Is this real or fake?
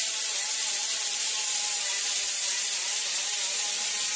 real